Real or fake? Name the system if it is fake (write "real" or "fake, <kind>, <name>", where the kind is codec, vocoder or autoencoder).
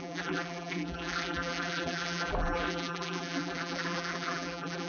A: fake, vocoder, BigVGAN v2